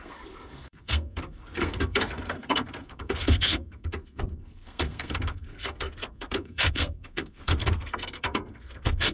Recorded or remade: remade